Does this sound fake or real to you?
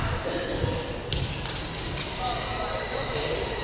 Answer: real